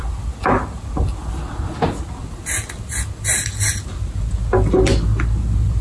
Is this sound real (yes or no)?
yes